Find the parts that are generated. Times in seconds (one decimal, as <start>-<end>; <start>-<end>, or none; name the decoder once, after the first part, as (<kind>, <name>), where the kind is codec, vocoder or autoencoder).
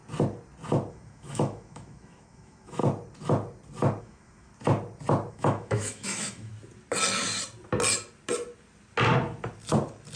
0.9-2.8 (autoencoder, DAC-VAE); 4.0-4.5; 5.3-6.5